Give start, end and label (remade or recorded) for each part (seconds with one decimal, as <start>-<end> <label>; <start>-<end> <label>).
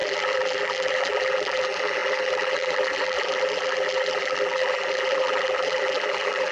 0.0-6.5 remade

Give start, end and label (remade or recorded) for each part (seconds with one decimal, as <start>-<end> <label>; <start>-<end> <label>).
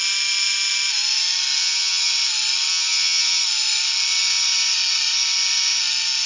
0.0-1.6 recorded; 1.6-2.1 remade; 2.1-2.7 recorded; 2.7-3.4 remade; 3.4-6.3 recorded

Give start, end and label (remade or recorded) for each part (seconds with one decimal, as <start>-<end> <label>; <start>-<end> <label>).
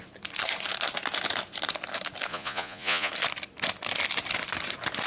0.0-2.3 recorded; 2.3-3.1 remade; 3.1-5.1 recorded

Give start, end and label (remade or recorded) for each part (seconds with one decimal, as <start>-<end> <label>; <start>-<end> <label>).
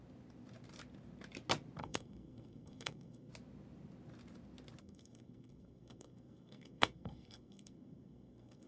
0.0-1.8 recorded; 1.8-3.3 remade; 3.3-4.8 recorded; 4.8-8.7 remade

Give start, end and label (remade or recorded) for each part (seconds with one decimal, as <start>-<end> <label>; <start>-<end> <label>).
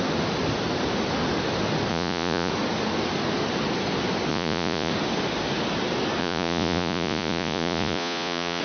0.0-1.9 recorded; 1.9-2.5 remade; 2.5-4.3 recorded; 4.3-4.9 remade; 4.9-6.2 recorded; 6.2-8.6 remade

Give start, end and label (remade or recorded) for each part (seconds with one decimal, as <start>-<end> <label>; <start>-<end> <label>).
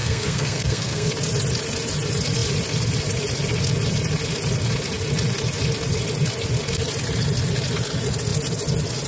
0.0-1.1 remade; 1.1-9.1 recorded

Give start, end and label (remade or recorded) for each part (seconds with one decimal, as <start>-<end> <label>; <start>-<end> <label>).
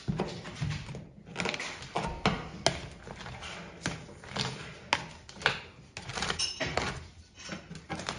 0.0-8.2 recorded